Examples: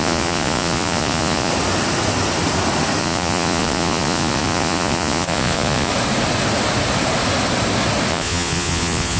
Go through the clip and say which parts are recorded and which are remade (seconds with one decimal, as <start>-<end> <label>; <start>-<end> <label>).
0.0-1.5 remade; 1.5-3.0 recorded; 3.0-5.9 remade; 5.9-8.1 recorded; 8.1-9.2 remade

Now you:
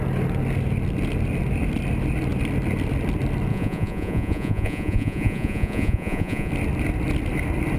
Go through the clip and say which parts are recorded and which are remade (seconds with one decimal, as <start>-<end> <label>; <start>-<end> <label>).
0.0-3.5 recorded; 3.5-6.5 remade; 6.5-7.8 recorded

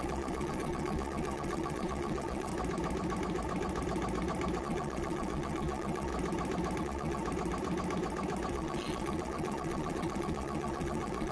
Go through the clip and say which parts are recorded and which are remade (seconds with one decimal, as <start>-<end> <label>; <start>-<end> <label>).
0.0-2.5 remade; 2.5-4.6 recorded; 4.6-6.1 remade; 6.1-6.8 recorded; 6.8-7.2 remade; 7.2-8.5 recorded; 8.5-11.3 remade

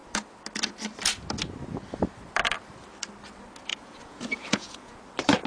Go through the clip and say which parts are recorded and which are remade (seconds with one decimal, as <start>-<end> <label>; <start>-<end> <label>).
0.0-3.7 recorded; 3.7-5.0 remade; 5.0-5.5 recorded

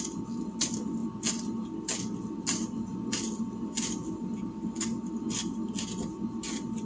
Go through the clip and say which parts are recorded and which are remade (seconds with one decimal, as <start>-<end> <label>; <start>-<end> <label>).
0.0-6.8 recorded

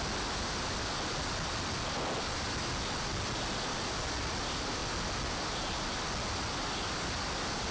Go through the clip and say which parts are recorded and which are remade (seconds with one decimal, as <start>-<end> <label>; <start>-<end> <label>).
0.0-7.7 recorded

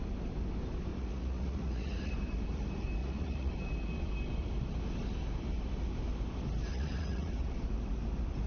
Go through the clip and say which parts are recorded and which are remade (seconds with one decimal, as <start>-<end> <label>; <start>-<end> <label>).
0.0-0.9 recorded; 0.9-2.1 remade; 2.1-3.0 recorded; 3.0-3.5 remade; 3.5-6.7 recorded; 6.7-7.3 remade; 7.3-8.5 recorded